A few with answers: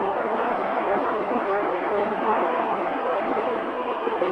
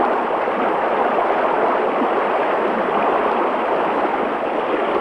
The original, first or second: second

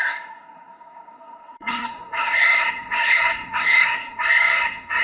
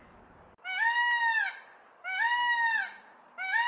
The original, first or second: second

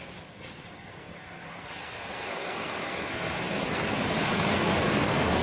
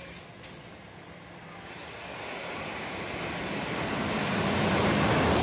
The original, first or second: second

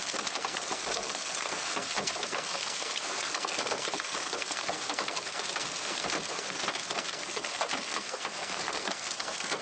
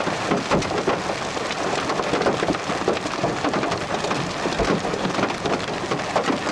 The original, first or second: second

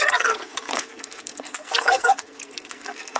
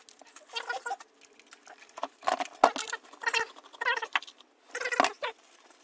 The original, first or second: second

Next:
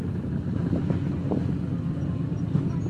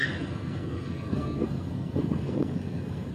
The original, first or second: first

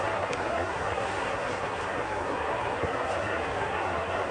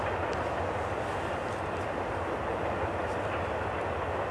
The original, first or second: second